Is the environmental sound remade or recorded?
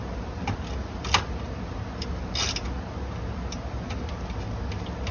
recorded